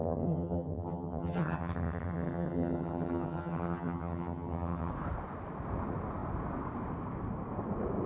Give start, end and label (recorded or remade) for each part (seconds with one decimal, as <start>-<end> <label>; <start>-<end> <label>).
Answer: 0.0-4.9 remade; 4.9-8.1 recorded